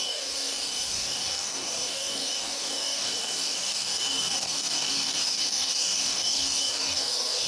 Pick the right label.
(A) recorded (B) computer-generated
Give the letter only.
B